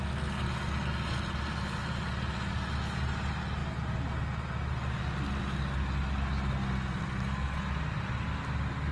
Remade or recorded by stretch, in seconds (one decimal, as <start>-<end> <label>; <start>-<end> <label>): 0.0-8.9 recorded